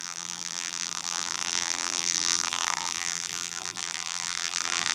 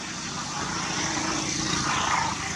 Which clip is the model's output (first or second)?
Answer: first